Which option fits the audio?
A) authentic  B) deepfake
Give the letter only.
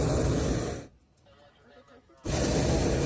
A